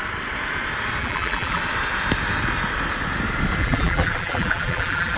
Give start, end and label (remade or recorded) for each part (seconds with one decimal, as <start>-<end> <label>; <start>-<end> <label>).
0.0-1.0 recorded; 1.0-1.6 remade; 1.6-3.6 recorded; 3.6-5.2 remade